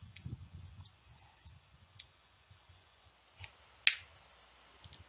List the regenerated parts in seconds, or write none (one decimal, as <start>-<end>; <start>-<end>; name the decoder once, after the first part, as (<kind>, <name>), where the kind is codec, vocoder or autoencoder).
0.0-3.1 (vocoder, Vocos)